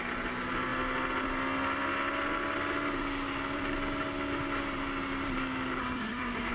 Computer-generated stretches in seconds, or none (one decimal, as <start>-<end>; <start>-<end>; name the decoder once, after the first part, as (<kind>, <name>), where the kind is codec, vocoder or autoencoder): 5.8-6.5 (codec, SNAC)